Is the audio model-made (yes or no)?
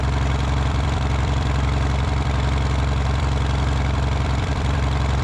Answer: yes